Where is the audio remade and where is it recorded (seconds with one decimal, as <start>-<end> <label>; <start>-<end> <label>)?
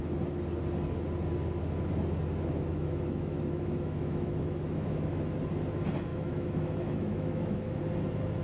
0.0-2.7 recorded; 2.7-5.2 remade; 5.2-6.1 recorded; 6.1-7.8 remade; 7.8-8.4 recorded